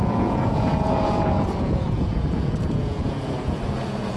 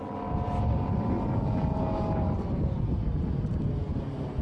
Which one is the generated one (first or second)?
first